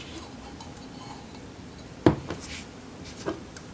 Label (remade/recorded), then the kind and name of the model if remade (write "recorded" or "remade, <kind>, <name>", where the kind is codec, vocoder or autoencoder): recorded